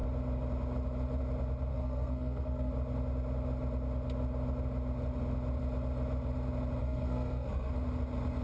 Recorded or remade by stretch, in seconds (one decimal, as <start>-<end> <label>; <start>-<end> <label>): 0.0-1.7 recorded; 1.7-2.7 remade; 2.7-6.8 recorded; 6.8-7.7 remade; 7.7-8.4 recorded